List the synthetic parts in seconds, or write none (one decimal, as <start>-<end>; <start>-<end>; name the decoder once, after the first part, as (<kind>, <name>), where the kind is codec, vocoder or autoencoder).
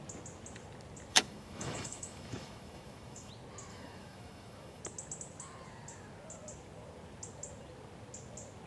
1.1-3.3 (autoencoder, DAC-VAE); 3.7-4.8